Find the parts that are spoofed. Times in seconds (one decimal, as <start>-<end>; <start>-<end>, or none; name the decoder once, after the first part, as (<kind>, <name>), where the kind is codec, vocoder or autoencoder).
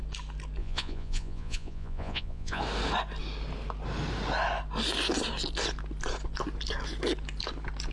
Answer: 0.6-2.6 (vocoder, Vocos)